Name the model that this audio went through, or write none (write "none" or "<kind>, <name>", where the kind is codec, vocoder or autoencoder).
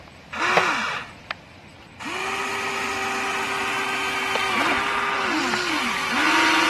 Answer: none